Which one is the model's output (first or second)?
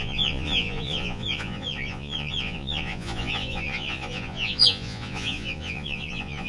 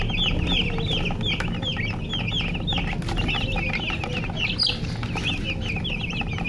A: first